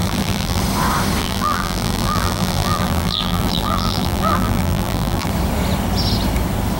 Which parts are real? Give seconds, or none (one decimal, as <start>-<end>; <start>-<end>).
0.6-1.2; 5.3-6.8